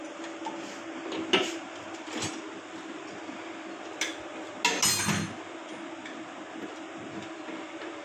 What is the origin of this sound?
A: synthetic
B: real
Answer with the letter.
B